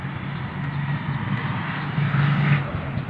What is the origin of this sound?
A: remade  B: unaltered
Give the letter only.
B